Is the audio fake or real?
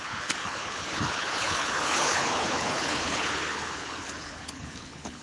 fake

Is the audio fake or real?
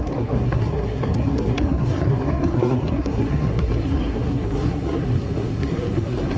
fake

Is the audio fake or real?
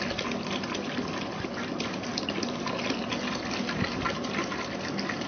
real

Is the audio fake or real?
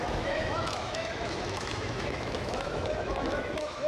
fake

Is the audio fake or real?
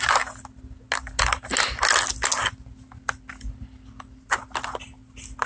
real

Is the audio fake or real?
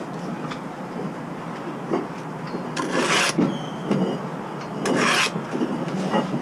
real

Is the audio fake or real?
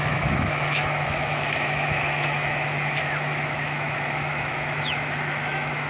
fake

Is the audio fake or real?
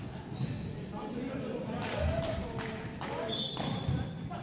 real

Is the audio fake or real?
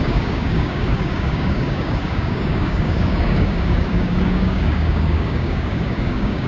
fake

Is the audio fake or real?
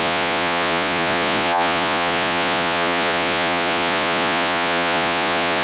fake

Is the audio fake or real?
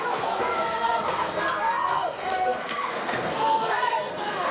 fake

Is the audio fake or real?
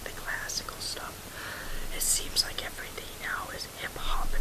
real